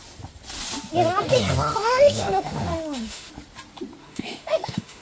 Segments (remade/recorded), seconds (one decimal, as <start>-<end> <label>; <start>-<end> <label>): 0.0-1.7 recorded; 1.7-3.3 remade; 3.3-4.0 recorded; 4.0-5.0 remade